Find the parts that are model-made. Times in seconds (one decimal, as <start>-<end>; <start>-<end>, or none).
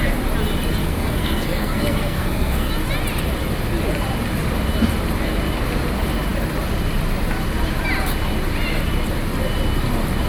0.8-2.7